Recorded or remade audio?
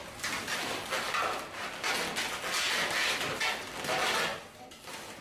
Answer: recorded